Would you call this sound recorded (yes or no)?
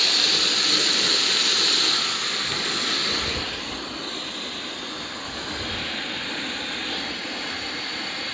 yes